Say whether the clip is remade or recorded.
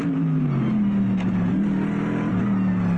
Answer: recorded